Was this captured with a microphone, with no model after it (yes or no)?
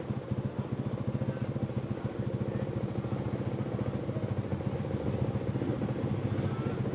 yes